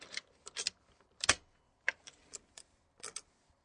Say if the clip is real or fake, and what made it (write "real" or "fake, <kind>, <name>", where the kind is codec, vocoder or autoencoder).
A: real